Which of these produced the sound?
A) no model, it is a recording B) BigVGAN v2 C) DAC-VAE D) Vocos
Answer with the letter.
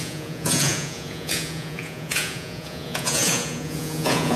D